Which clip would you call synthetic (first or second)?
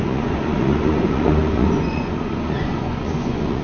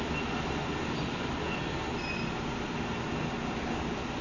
first